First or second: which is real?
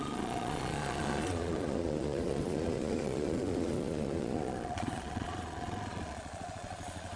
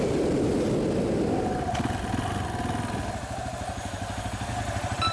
second